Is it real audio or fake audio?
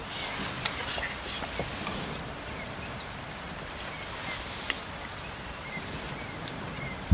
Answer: fake